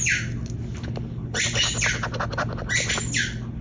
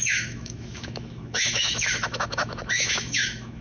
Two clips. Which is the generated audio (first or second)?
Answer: second